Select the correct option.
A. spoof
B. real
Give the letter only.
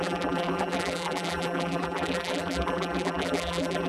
A